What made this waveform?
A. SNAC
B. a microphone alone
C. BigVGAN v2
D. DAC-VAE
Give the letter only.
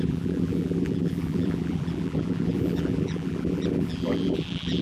C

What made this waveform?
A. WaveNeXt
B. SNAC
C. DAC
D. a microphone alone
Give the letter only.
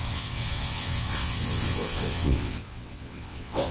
A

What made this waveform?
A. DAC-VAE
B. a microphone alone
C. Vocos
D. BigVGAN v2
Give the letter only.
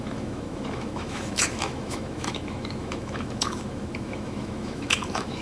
A